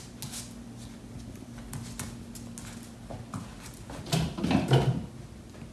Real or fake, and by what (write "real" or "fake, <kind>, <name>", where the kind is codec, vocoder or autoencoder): real